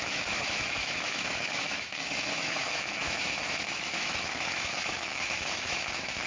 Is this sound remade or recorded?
remade